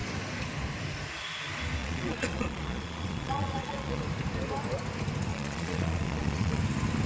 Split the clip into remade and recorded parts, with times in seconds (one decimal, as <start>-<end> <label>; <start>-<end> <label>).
0.0-1.8 recorded; 1.8-4.0 remade; 4.0-5.3 recorded; 5.3-6.6 remade; 6.6-7.1 recorded